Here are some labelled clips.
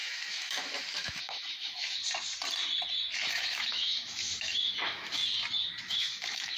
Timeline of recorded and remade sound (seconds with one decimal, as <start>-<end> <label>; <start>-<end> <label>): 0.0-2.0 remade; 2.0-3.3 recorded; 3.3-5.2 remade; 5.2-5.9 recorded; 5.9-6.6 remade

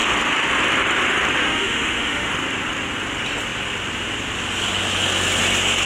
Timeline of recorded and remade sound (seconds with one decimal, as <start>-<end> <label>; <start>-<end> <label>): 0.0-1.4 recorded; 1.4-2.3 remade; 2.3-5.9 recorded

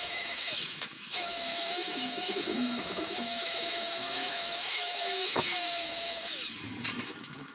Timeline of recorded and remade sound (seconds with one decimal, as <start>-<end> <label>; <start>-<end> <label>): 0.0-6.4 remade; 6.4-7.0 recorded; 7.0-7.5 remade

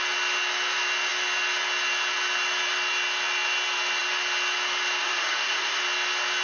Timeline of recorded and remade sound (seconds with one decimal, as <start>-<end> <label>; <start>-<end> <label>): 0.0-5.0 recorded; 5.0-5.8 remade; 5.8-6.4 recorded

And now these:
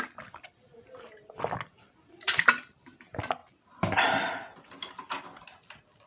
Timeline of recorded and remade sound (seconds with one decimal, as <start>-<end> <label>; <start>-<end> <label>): 0.0-6.1 recorded